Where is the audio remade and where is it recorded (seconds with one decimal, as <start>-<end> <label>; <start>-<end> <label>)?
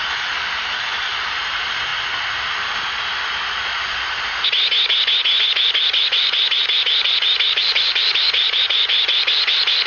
0.0-1.9 remade; 1.9-5.4 recorded; 5.4-9.9 remade